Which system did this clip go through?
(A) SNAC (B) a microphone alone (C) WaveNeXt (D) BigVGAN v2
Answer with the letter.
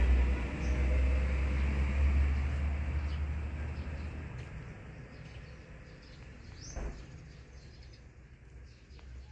B